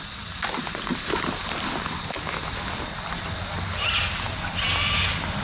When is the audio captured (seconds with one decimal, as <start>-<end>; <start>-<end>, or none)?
0.0-5.4